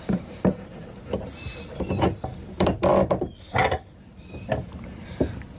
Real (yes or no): yes